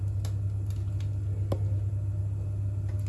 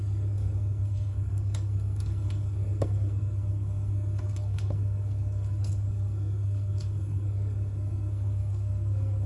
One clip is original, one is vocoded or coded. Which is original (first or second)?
first